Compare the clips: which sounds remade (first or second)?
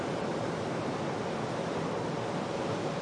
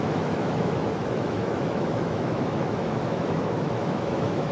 second